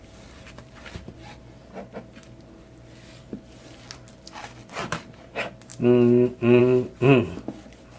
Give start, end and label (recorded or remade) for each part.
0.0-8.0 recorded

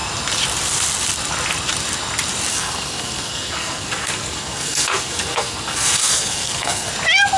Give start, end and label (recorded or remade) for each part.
0.0-2.5 recorded; 2.5-6.9 remade; 6.9-7.4 recorded

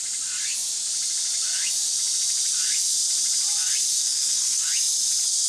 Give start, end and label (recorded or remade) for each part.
0.0-3.9 recorded; 3.9-4.7 remade; 4.7-5.5 recorded